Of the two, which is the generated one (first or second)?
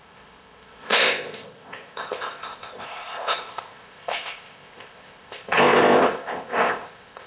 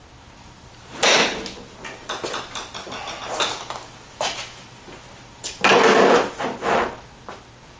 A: first